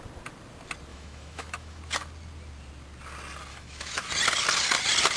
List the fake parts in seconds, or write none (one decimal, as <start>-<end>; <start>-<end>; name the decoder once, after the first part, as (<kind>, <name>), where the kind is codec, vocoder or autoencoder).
0.9-1.8 (autoencoder, DAC-VAE); 3.5-4.1